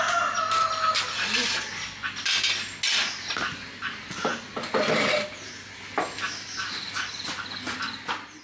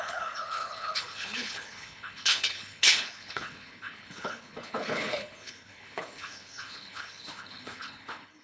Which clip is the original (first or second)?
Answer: first